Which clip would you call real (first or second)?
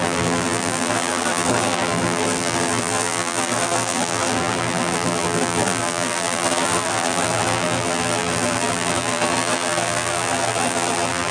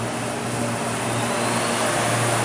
second